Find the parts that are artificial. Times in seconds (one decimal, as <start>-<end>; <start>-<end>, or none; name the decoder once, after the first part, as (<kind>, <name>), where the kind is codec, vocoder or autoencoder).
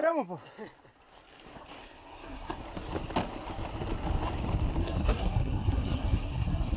1.8-2.6 (codec, SNAC); 4.8-6.8